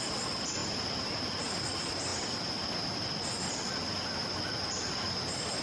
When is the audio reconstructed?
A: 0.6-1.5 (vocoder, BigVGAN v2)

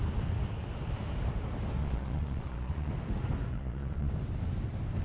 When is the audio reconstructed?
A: 1.8-2.9 (vocoder, Vocos); 3.5-4.1

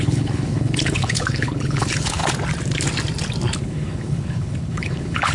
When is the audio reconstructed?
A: 0.0-2.2 (codec, HILCodec); 3.6-5.3

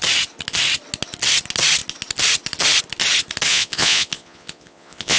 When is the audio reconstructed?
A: 3.5-5.2 (vocoder, Vocos)

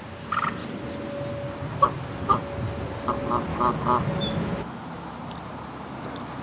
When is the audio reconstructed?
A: 3.5-5.2 (autoencoder, DAC-VAE)